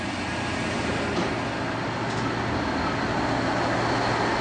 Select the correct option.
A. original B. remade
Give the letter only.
A